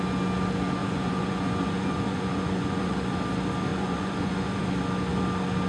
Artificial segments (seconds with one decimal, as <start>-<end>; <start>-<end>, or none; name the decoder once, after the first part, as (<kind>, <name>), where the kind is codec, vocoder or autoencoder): 0.8-3.0 (vocoder, Vocos); 3.7-4.6